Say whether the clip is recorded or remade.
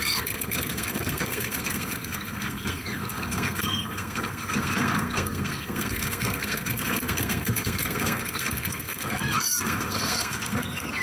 remade